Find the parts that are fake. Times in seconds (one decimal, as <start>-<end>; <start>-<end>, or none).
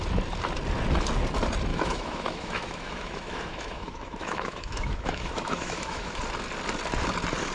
1.7-6.2